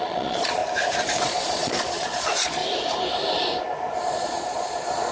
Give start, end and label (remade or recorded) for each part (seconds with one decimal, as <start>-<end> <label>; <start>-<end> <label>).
0.0-0.6 remade; 0.6-1.2 recorded; 1.2-2.6 remade; 2.6-4.0 recorded; 4.0-5.1 remade